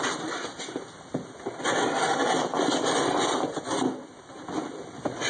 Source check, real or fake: real